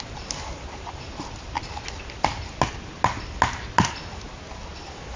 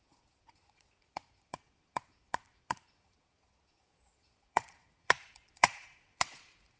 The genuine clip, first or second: first